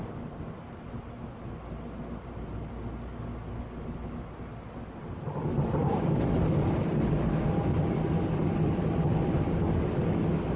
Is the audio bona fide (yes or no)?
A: yes